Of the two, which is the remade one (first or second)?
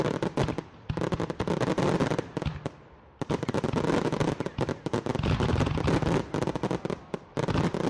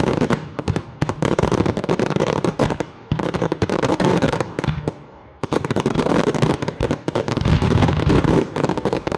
second